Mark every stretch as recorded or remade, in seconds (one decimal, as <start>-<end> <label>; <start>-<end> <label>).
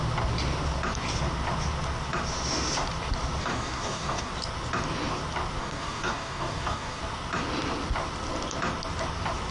0.0-3.4 recorded; 3.4-4.3 remade; 4.3-5.6 recorded; 5.6-7.0 remade; 7.0-9.5 recorded